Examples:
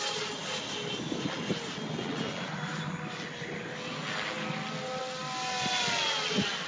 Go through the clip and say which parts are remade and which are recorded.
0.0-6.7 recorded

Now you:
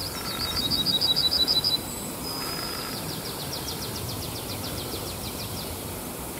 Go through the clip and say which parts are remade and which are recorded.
0.0-3.4 remade; 3.4-6.4 recorded

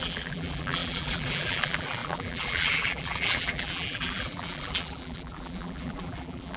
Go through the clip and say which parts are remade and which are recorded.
0.0-6.6 remade

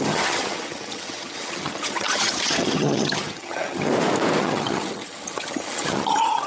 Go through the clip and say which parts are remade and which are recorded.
0.0-3.9 remade; 3.9-4.4 recorded; 4.4-6.5 remade

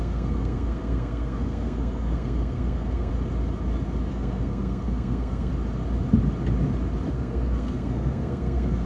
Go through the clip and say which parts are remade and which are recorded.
0.0-3.1 remade; 3.1-4.1 recorded; 4.1-5.5 remade; 5.5-7.1 recorded; 7.1-8.9 remade